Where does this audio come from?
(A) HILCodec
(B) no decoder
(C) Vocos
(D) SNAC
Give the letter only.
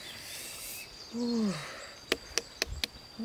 B